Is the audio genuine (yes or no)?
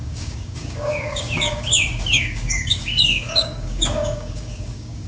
no